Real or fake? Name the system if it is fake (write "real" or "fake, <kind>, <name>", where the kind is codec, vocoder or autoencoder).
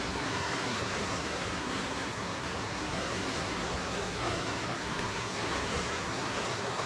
fake, codec, SNAC